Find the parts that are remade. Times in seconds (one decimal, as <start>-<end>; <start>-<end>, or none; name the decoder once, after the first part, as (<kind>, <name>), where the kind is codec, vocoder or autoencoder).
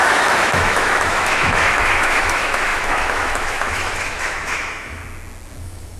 0.0-5.0 (autoencoder, DAC-VAE); 5.6-6.0